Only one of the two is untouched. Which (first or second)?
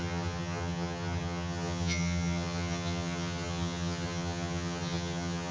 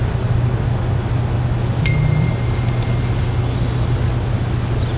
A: second